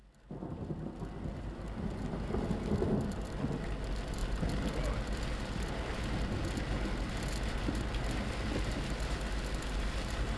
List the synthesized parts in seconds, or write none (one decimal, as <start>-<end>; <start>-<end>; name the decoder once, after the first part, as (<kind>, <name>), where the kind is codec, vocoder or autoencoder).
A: none